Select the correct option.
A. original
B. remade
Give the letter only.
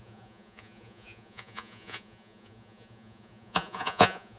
B